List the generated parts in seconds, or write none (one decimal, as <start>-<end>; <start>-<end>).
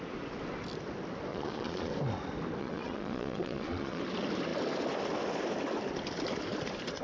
1.3-1.9; 2.6-4.0